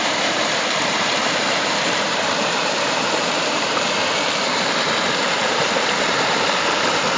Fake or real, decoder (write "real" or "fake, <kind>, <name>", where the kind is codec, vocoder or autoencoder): fake, vocoder, BigVGAN v2